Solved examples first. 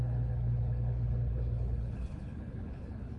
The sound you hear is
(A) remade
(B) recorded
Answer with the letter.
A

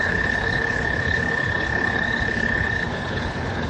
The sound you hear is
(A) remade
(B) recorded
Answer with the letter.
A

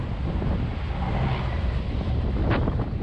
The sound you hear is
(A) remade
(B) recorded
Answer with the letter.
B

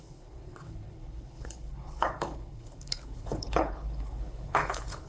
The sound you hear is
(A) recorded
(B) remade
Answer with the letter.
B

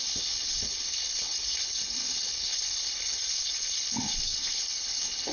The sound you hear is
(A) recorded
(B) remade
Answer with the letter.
B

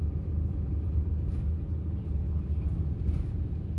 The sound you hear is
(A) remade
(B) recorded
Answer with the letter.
B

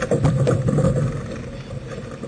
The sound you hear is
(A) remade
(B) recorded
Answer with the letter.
B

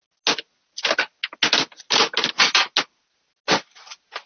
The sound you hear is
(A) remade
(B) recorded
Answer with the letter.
B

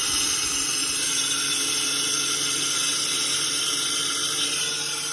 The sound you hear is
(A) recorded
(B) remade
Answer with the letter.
A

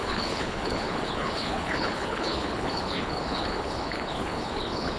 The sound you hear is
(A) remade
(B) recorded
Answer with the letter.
A